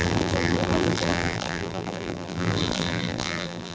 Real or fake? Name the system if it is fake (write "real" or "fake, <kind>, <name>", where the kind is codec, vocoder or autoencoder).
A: fake, vocoder, BigVGAN v2